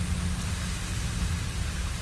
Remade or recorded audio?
recorded